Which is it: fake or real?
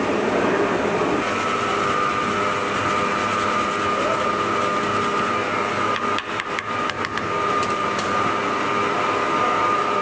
real